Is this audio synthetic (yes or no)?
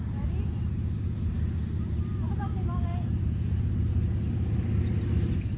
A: no